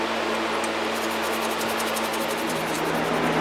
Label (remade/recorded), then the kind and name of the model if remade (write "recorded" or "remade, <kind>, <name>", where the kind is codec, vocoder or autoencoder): recorded